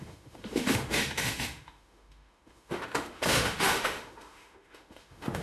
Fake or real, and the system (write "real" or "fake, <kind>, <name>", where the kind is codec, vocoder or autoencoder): fake, autoencoder, DAC-VAE